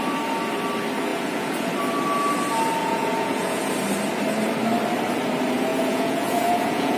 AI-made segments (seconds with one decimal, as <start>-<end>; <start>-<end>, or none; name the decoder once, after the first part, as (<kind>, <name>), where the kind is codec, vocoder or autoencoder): 1.1-1.7 (vocoder, Vocos); 2.8-3.7; 5.7-7.0